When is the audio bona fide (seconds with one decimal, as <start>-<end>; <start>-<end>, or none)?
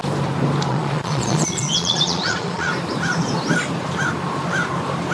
0.0-0.7; 2.7-5.1